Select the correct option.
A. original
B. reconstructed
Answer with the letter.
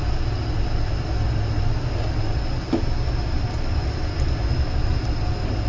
A